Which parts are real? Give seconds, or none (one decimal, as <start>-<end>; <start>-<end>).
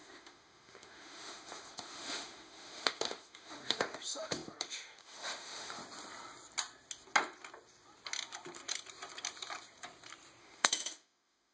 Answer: 5.8-10.4